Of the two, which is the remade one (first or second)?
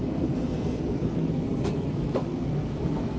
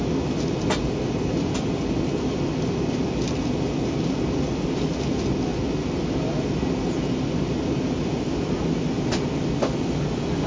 first